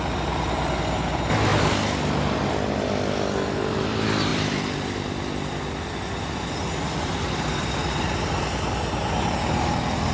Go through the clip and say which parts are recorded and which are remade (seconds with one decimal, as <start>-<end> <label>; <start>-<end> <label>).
0.0-1.5 recorded; 1.5-2.5 remade; 2.5-4.3 recorded; 4.3-8.4 remade; 8.4-10.1 recorded